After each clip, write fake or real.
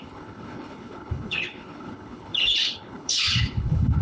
fake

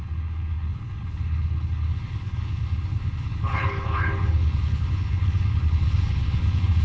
fake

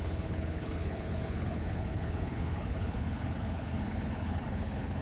fake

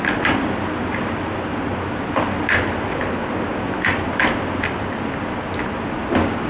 real